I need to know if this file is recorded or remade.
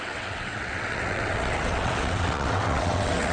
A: remade